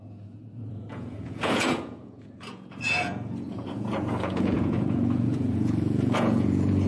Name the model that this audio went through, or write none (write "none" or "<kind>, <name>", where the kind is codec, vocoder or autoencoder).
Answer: vocoder, Vocos